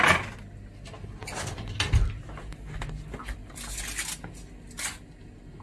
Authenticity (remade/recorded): recorded